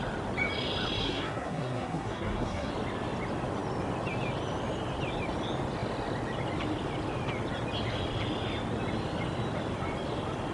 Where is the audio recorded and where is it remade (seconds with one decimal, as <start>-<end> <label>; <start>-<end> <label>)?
0.0-1.0 recorded; 1.0-2.7 remade; 2.7-10.5 recorded